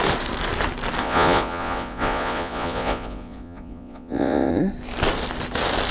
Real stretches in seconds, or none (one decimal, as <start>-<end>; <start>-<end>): 0.0-1.0; 4.5-5.9